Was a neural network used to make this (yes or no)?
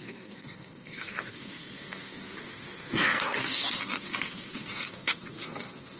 yes